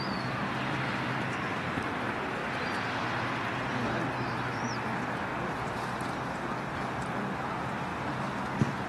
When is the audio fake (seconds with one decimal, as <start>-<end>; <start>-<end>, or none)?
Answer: 0.0-2.4; 4.3-5.3; 6.7-8.9